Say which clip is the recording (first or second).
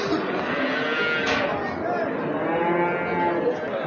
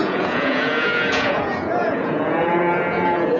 first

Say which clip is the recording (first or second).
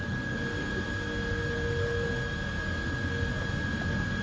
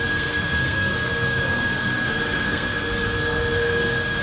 first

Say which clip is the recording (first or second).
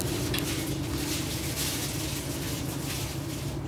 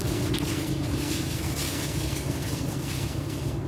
first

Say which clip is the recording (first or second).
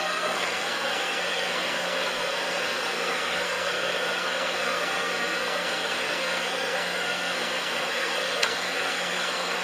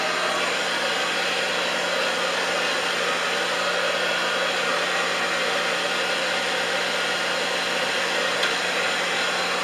second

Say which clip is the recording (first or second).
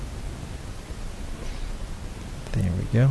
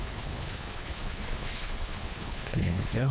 first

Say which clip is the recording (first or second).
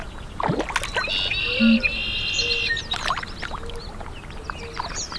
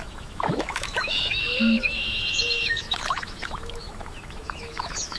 first